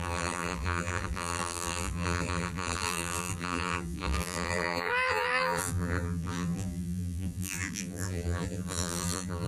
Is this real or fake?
fake